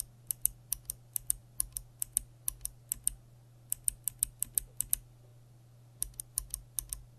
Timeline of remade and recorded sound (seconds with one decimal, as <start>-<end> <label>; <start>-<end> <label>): 0.0-7.2 recorded